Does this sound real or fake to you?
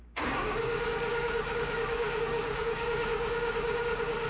fake